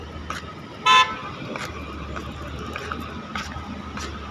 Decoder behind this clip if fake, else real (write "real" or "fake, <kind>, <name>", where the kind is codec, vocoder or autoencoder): real